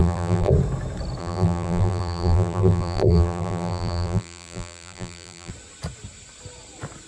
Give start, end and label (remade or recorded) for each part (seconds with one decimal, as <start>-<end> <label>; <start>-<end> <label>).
0.0-0.5 remade; 0.5-1.2 recorded; 1.2-5.5 remade; 5.5-7.1 recorded